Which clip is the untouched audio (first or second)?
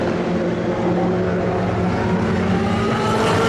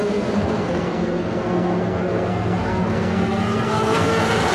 first